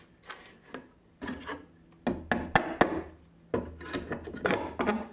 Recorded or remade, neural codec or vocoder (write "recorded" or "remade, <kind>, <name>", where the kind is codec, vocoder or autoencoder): recorded